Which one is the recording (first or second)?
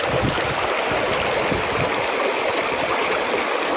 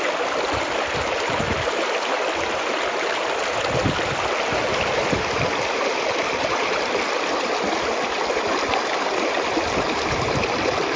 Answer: first